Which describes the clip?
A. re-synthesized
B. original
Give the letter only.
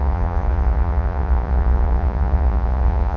A